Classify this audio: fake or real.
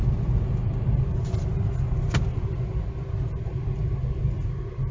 real